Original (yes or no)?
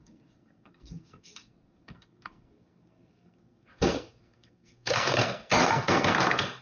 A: no